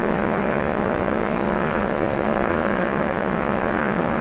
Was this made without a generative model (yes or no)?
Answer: no